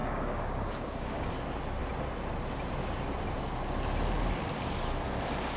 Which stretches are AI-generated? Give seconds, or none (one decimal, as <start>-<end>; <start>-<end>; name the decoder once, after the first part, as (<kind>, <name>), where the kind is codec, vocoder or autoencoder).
0.0-1.3 (codec, DAC)